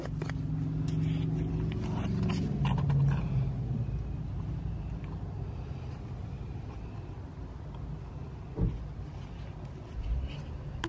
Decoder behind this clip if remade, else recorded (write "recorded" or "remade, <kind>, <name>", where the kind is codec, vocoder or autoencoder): recorded